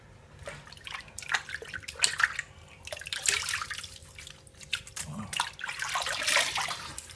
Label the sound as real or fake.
real